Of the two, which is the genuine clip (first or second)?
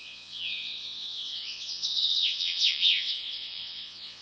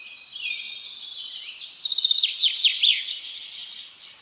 second